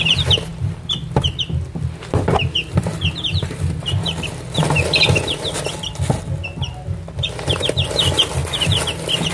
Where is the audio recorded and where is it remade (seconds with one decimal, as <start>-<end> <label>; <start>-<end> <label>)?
0.0-0.5 recorded; 0.5-1.2 remade; 1.2-3.3 recorded; 3.3-4.6 remade; 4.6-9.3 recorded